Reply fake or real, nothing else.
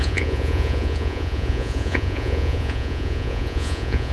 fake